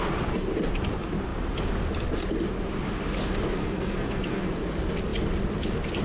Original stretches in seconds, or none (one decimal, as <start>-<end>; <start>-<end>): 0.0-3.6; 4.4-6.0